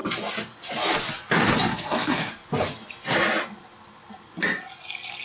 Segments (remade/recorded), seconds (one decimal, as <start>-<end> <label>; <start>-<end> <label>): 0.0-1.7 recorded; 1.7-2.3 remade; 2.3-5.2 recorded